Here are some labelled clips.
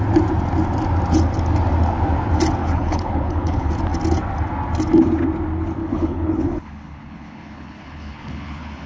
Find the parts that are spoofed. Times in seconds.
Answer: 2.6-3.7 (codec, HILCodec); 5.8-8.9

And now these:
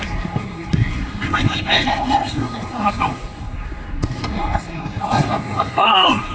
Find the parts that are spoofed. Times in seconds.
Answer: 0.0-6.3 (codec, SNAC)

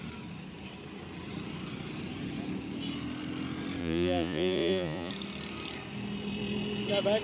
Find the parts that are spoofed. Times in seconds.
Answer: 3.8-5.1 (vocoder, Vocos)

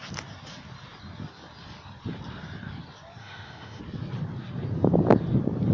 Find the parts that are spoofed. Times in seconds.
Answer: 3.2-3.8 (autoencoder, DAC-VAE)

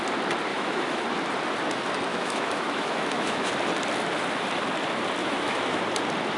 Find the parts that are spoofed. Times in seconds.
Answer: 0.5-1.0 (autoencoder, DAC-VAE); 2.1-3.5; 5.2-5.8

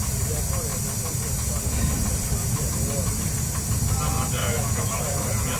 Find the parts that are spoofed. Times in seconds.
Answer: 4.4-5.0 (autoencoder, DAC-VAE)

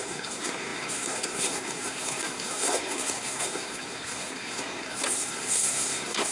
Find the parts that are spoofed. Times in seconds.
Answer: 0.0-6.3 (codec, SNAC)

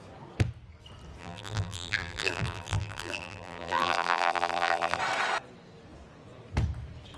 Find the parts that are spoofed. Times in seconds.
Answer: 1.2-5.0 (vocoder, BigVGAN v2)